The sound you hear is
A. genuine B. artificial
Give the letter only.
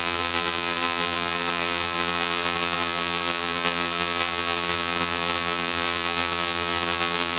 B